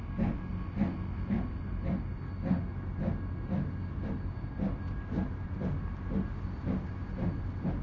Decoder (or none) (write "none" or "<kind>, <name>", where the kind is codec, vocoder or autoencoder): none